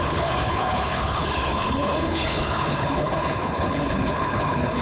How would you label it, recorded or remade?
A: remade